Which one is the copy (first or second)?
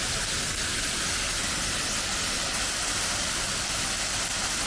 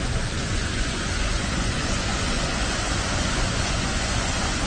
second